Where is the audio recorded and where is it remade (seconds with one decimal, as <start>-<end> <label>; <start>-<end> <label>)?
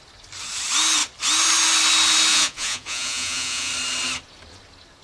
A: 0.0-2.3 recorded; 2.3-3.7 remade; 3.7-5.0 recorded